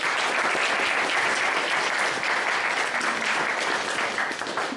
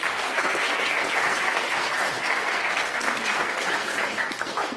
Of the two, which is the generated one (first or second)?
second